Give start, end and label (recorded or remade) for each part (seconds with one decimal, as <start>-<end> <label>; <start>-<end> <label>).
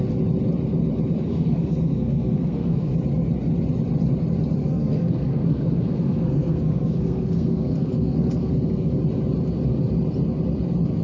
0.0-1.3 recorded; 1.3-2.9 remade; 2.9-4.6 recorded; 4.6-8.9 remade; 8.9-11.0 recorded